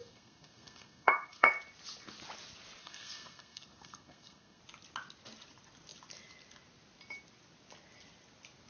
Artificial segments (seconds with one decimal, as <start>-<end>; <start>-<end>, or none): 0.0-1.5; 2.8-4.6